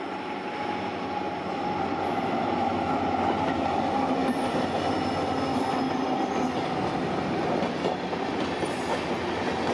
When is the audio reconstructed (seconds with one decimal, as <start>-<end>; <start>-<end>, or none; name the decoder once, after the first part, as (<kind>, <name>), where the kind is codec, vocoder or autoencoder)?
none